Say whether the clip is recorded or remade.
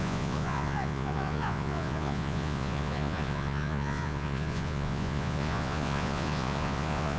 remade